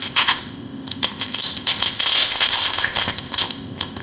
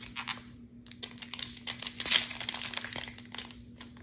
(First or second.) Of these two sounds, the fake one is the first